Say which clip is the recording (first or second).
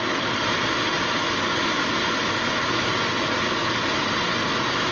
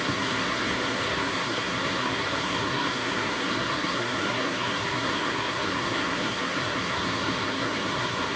first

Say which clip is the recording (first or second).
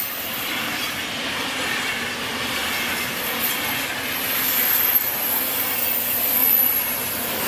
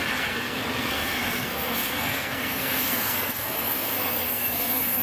first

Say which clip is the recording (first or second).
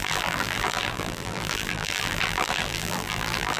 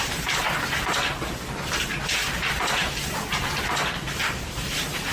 second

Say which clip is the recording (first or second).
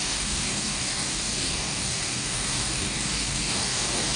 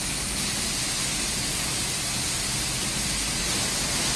second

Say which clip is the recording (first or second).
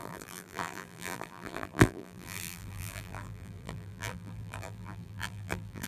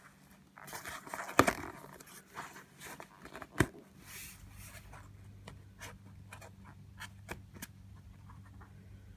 second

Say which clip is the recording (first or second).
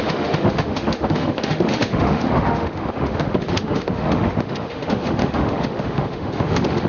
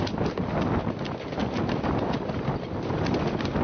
second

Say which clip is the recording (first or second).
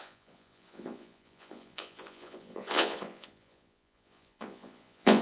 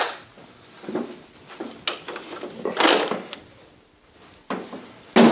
second